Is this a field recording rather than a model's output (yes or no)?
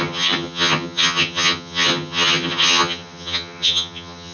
no